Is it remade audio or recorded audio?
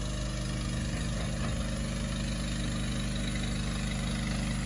recorded